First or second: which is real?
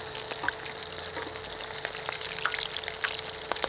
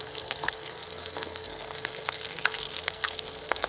first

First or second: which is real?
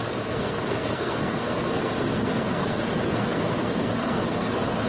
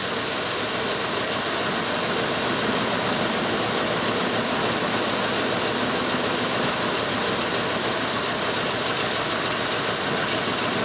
second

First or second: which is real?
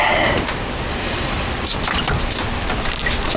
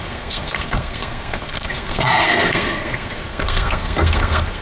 first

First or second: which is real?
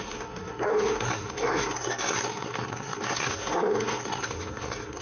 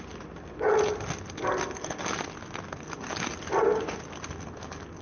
second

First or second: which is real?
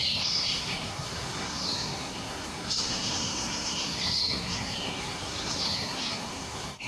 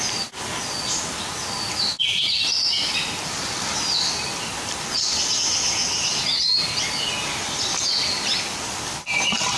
second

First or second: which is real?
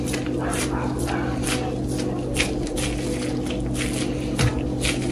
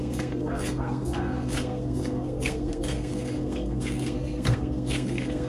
first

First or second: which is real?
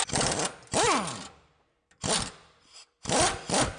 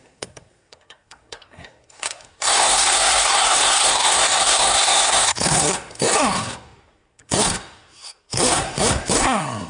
first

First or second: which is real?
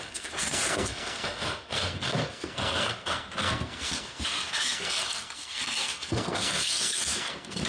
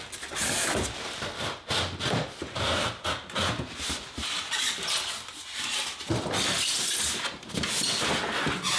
second